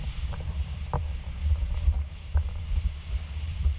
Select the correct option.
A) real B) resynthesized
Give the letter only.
B